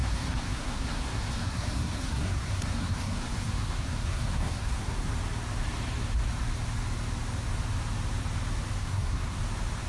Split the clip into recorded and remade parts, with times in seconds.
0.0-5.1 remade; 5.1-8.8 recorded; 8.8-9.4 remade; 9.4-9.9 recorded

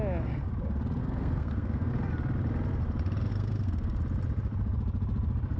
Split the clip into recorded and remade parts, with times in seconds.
0.0-1.0 recorded; 1.0-1.9 remade; 1.9-3.3 recorded; 3.3-4.0 remade; 4.0-5.6 recorded

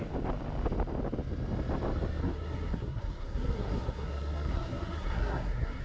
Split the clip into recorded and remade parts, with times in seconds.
0.0-2.2 recorded; 2.2-5.8 remade

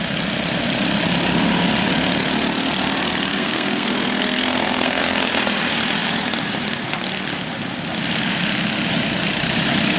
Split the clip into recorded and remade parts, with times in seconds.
0.0-3.3 recorded; 3.3-5.0 remade; 5.0-10.0 recorded

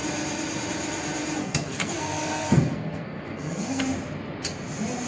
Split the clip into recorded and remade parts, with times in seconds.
0.0-1.4 recorded; 1.4-3.8 remade; 3.8-5.1 recorded

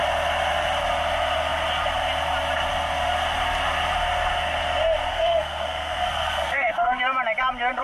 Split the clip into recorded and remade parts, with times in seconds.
0.0-5.1 recorded; 5.1-7.0 remade; 7.0-7.8 recorded

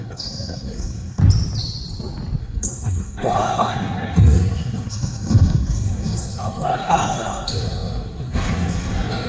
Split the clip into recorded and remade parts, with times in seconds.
0.0-1.2 remade; 1.2-2.4 recorded; 2.4-9.3 remade